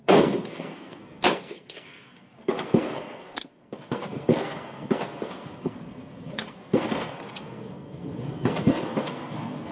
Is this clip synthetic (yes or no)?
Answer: yes